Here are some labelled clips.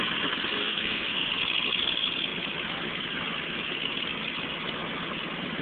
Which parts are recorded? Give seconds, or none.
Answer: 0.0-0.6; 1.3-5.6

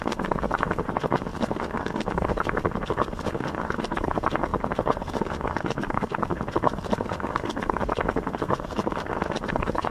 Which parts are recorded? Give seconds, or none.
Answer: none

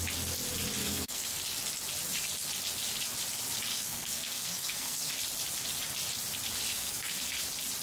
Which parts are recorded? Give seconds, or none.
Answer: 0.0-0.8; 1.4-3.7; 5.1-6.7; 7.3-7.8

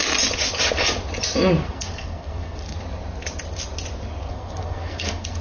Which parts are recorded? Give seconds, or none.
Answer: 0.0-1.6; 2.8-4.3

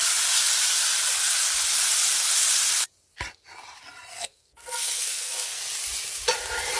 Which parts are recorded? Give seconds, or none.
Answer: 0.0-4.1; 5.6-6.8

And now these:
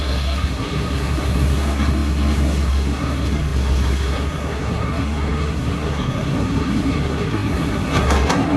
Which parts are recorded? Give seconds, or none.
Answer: none

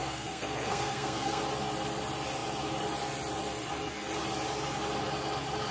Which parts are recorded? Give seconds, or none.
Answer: 1.4-5.7